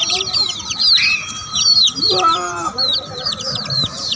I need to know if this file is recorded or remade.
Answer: remade